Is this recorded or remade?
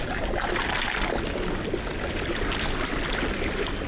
recorded